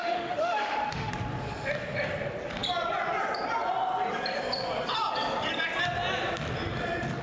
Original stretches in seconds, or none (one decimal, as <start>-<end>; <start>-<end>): 1.1-7.2